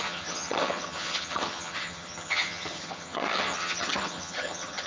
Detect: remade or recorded remade